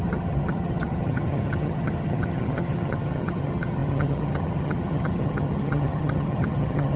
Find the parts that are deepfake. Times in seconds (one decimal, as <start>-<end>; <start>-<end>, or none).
0.0-7.0

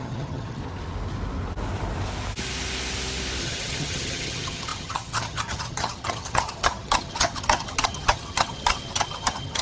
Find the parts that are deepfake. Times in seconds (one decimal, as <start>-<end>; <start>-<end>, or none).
0.0-0.6; 3.4-9.6

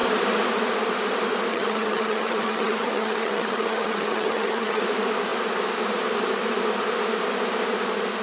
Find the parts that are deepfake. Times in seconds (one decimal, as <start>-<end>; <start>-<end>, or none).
1.5-4.8

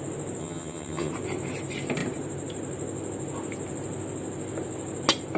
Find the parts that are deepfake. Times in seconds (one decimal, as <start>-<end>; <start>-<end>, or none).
0.4-1.1

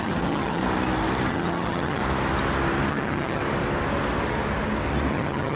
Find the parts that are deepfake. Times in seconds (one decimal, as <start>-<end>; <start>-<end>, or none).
0.0-0.6; 1.3-2.0; 2.9-3.4; 5.1-5.6